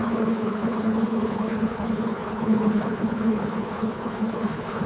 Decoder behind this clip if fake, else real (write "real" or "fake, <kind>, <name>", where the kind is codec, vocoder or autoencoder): fake, codec, HILCodec